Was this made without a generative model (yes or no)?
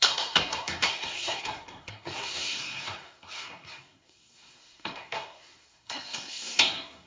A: no